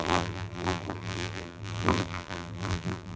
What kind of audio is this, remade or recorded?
remade